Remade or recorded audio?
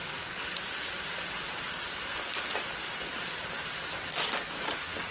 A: recorded